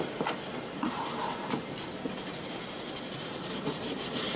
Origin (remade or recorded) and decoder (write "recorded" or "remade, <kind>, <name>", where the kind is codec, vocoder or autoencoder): recorded